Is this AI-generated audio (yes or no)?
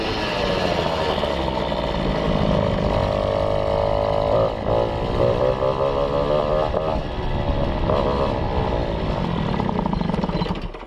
no